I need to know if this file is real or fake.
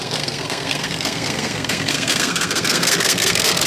fake